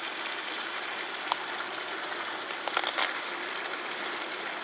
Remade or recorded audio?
recorded